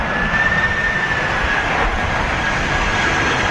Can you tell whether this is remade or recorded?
recorded